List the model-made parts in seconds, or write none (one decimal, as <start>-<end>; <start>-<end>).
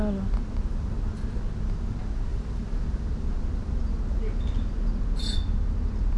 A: none